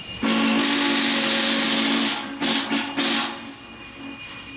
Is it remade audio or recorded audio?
recorded